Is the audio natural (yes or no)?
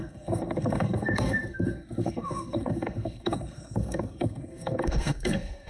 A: no